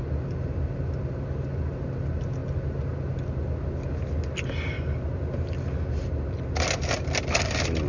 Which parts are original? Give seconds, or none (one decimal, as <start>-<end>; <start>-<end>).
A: 0.0-7.9